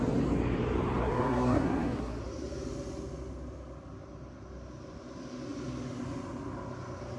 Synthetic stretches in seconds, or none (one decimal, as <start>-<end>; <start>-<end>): 1.0-2.2